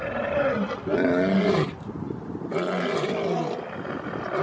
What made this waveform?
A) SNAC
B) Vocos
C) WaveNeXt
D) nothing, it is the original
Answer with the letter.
D